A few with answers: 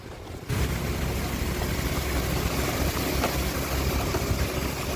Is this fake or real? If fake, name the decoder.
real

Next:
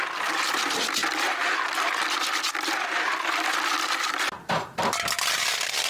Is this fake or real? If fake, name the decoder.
real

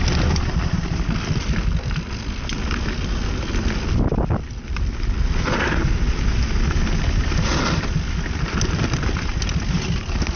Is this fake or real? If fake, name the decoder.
real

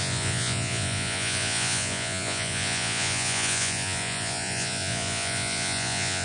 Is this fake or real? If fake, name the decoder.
fake, vocoder, Vocos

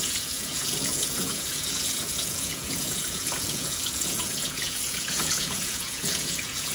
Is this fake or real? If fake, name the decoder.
fake, vocoder, Vocos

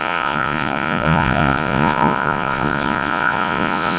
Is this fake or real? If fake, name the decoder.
fake, vocoder, Vocos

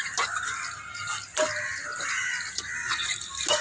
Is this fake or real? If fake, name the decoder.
real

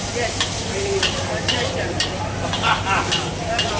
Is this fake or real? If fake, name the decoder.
real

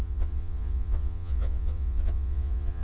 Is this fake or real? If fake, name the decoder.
fake, vocoder, Vocos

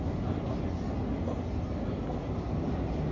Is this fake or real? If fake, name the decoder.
real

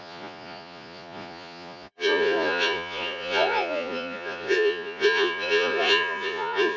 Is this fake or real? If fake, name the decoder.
fake, vocoder, Vocos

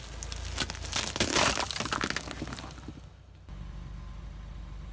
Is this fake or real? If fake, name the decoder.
real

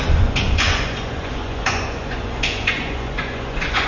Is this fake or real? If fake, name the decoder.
fake, vocoder, Vocos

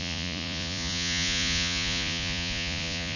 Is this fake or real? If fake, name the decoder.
fake, vocoder, Vocos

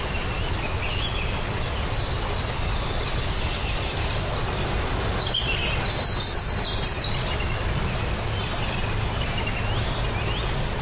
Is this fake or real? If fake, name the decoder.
real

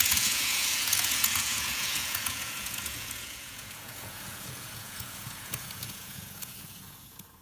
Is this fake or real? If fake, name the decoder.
fake, vocoder, Vocos